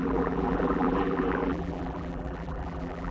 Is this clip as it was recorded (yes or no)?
no